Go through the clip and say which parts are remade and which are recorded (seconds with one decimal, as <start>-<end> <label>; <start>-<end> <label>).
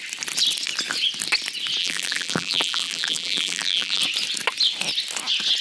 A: 0.0-1.8 recorded; 1.8-4.0 remade; 4.0-5.6 recorded